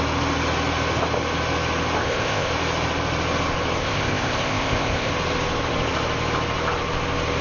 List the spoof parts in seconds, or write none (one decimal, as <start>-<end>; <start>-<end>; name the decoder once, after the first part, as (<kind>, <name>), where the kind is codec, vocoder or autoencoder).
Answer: 2.0-2.5 (codec, ZipCodec); 3.8-5.1